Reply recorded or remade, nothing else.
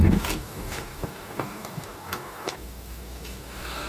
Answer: remade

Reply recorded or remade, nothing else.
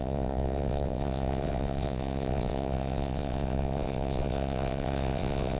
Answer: remade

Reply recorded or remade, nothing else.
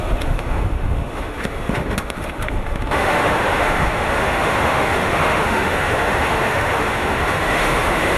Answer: remade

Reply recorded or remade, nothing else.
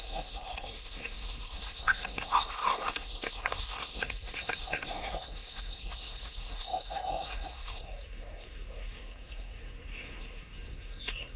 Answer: remade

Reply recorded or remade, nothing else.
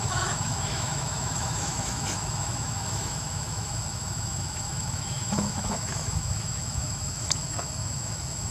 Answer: remade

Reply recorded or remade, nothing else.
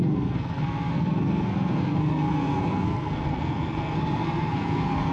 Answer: remade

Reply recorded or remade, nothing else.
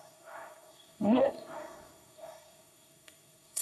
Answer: remade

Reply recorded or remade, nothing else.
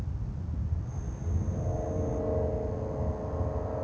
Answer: recorded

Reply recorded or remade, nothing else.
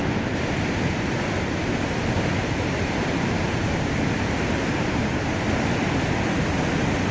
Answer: recorded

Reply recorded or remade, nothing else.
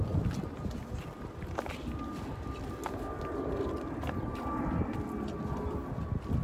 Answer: recorded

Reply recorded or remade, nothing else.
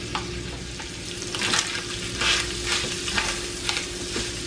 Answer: recorded